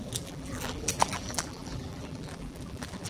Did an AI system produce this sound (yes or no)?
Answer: yes